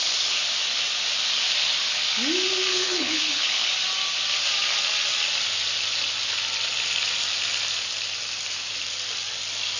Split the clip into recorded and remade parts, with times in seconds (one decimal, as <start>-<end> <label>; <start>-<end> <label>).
0.0-2.7 recorded; 2.7-3.7 remade; 3.7-9.8 recorded